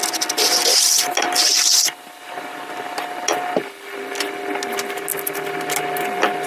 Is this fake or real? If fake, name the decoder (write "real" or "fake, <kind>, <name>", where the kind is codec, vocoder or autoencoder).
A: real